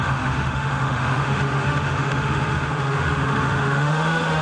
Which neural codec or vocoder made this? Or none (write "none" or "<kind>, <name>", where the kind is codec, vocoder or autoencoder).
autoencoder, DAC-VAE